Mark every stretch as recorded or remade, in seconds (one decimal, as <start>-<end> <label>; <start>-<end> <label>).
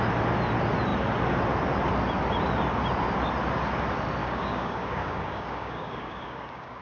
0.0-4.2 recorded; 4.2-6.8 remade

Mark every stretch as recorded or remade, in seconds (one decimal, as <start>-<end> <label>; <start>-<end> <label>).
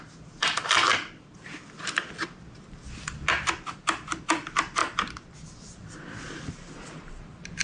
0.0-0.9 recorded; 0.9-2.4 remade; 2.4-7.6 recorded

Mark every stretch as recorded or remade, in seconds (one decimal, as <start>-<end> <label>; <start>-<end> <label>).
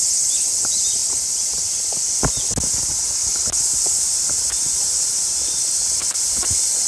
0.0-6.9 recorded